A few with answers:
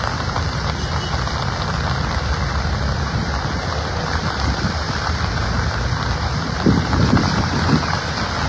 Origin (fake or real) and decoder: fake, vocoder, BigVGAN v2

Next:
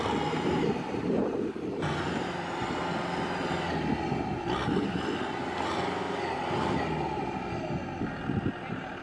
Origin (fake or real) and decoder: real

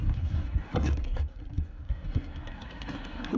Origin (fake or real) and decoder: fake, codec, SNAC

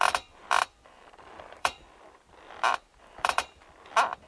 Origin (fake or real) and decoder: fake, vocoder, BigVGAN v2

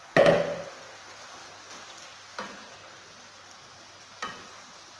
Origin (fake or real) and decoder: real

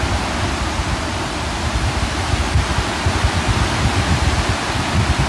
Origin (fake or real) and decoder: real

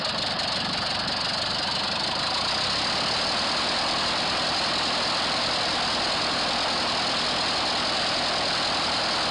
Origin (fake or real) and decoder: real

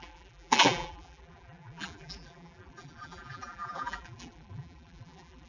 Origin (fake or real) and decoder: fake, vocoder, BigVGAN v2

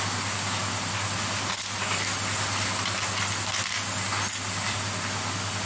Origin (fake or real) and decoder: real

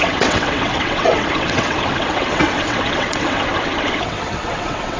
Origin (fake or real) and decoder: fake, vocoder, WaveNeXt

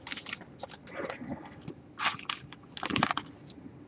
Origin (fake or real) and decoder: real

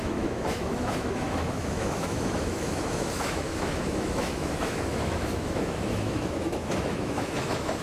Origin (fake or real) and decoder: fake, autoencoder, DAC-VAE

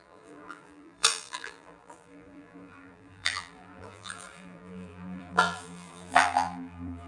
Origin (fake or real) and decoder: fake, vocoder, BigVGAN v2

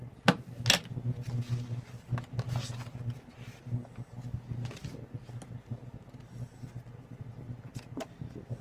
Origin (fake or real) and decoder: real